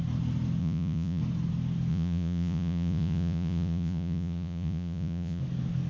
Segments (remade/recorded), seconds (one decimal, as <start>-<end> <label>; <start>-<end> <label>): 0.0-0.6 recorded; 0.6-1.2 remade; 1.2-1.9 recorded; 1.9-5.4 remade; 5.4-5.9 recorded